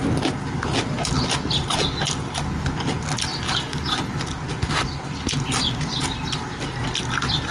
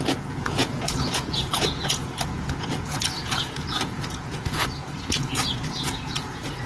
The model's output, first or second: second